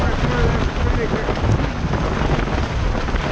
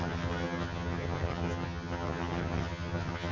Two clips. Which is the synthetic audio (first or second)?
second